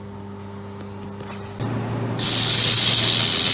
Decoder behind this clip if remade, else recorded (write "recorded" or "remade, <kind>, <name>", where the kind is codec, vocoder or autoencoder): recorded